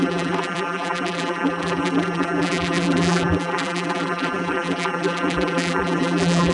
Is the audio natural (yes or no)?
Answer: no